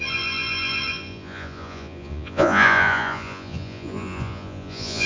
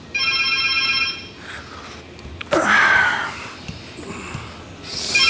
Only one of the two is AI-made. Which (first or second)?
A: first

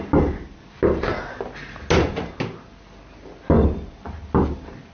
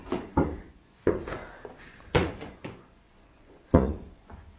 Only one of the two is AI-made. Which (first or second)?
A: second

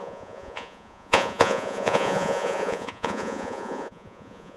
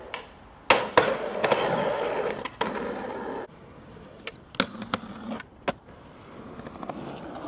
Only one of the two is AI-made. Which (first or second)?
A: first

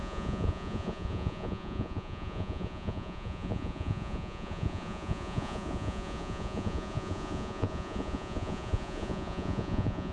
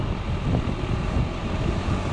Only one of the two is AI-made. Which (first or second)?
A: first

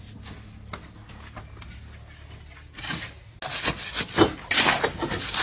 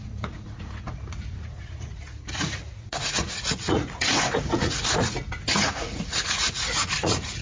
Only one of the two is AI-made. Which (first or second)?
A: second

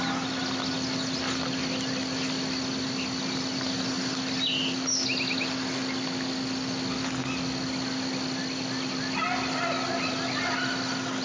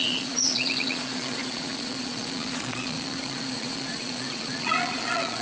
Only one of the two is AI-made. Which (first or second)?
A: second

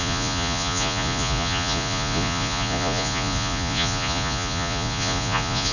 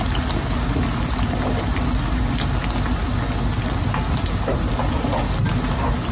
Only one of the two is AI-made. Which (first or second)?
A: first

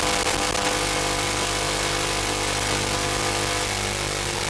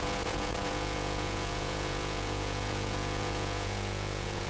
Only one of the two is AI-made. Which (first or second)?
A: second